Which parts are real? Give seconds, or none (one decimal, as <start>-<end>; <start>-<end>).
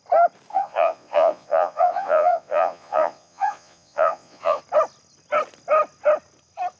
0.0-0.5; 4.6-6.8